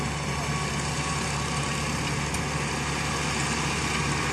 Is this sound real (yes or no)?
yes